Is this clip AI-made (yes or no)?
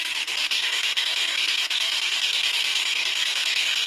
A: yes